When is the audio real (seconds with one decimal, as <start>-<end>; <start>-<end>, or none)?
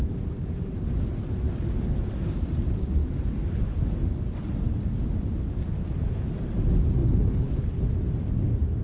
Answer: 0.0-8.8